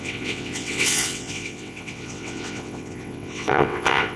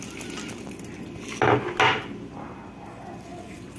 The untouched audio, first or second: second